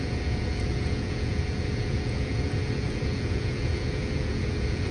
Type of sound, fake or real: fake